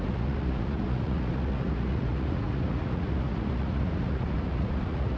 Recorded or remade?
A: remade